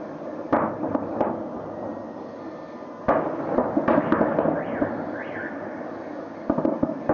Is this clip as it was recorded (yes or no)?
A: yes